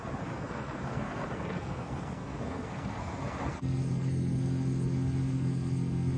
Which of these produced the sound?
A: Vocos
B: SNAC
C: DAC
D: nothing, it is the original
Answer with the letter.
B